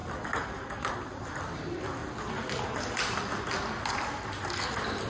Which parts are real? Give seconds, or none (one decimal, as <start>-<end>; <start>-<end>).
0.0-5.1